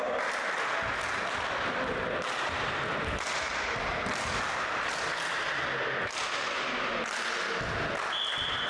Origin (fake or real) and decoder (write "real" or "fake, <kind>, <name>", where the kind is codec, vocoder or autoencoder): real